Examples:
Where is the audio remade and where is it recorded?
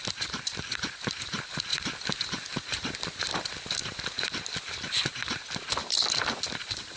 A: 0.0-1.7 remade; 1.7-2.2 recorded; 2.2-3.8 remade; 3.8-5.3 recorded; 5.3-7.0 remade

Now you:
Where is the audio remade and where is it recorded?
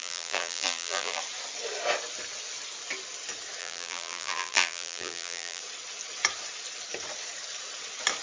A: 0.0-1.2 remade; 1.2-3.6 recorded; 3.6-5.6 remade; 5.6-8.2 recorded